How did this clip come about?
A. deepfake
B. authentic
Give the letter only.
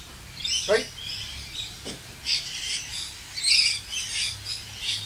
B